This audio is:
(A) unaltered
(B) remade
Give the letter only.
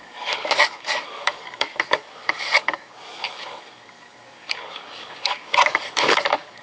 B